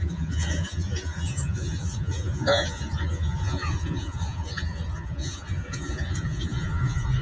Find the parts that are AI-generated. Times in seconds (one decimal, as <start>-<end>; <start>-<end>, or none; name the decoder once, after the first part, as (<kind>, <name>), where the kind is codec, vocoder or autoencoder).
0.0-7.2 (vocoder, Vocos)